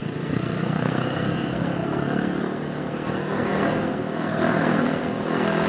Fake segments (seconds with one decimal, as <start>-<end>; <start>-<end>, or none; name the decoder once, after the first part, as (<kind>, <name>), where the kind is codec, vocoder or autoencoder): 0.0-5.7 (codec, SNAC)